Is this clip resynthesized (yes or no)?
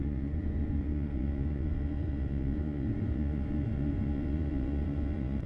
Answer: yes